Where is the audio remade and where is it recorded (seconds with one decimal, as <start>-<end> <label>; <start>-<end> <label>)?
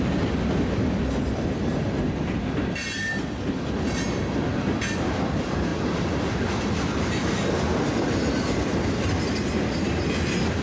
0.0-10.6 recorded